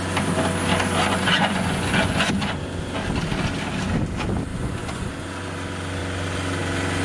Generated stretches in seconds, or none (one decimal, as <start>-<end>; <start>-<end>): 1.1-2.3; 4.5-5.1